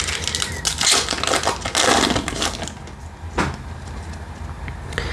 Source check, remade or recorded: recorded